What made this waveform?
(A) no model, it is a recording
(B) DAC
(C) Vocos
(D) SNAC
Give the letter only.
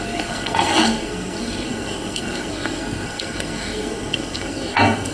D